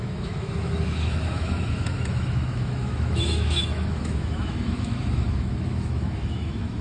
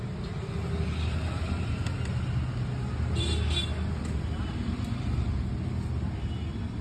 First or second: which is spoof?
first